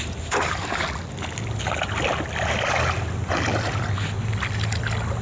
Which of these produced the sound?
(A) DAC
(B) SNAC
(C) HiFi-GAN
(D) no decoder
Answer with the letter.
D